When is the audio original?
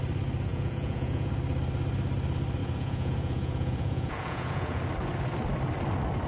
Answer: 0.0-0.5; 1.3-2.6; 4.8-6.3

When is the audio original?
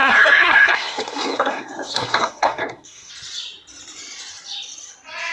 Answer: 3.1-5.3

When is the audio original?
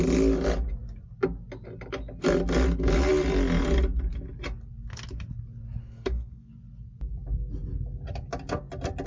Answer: 0.0-5.8; 6.5-9.1